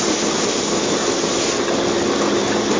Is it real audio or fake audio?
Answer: real